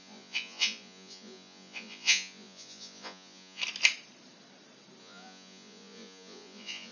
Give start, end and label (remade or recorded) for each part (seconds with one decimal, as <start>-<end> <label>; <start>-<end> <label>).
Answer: 0.0-3.6 remade; 3.6-5.0 recorded; 5.0-6.9 remade